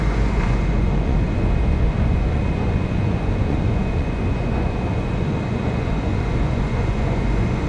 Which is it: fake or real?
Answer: fake